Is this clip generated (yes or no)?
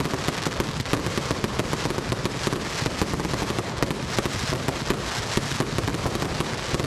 no